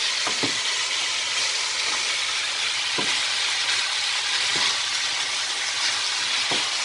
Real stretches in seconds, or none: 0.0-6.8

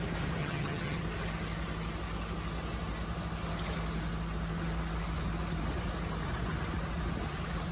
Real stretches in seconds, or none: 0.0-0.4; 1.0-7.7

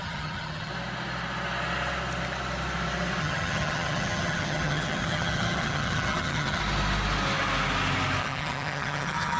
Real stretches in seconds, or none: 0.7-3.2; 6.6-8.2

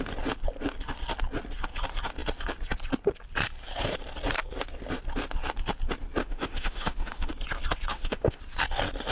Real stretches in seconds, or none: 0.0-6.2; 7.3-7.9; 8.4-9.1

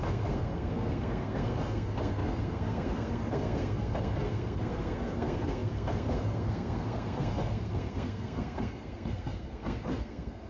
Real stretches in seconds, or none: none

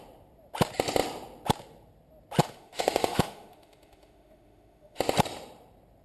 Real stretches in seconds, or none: 0.0-2.4; 5.0-6.0